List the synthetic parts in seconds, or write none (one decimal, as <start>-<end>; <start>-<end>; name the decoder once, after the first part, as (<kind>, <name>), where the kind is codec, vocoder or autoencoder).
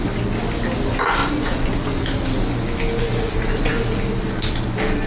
1.2-1.7 (vocoder, Vocos)